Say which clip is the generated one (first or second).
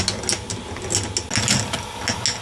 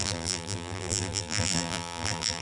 second